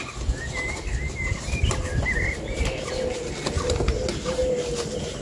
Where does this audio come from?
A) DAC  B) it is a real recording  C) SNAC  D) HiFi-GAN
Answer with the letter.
B